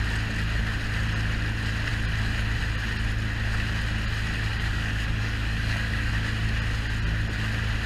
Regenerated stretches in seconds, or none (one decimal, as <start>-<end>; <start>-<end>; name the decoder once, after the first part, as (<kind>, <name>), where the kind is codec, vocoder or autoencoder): 4.5-6.1 (codec, DAC)